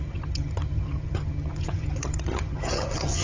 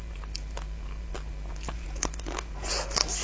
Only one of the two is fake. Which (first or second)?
first